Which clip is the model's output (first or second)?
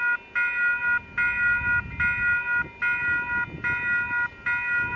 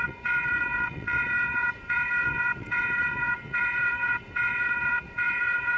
second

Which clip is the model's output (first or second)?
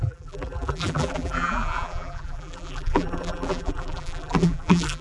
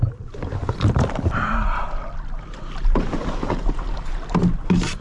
first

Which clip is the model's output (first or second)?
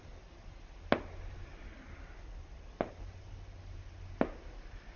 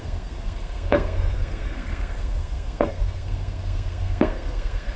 second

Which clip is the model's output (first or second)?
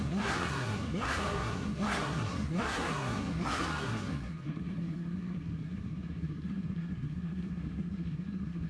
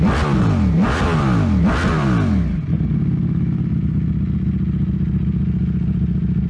first